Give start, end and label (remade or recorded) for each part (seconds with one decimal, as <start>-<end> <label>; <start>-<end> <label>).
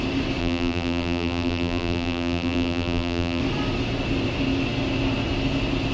0.0-0.4 recorded; 0.4-3.4 remade; 3.4-5.9 recorded